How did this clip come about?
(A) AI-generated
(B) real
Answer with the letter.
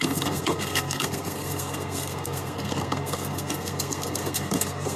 A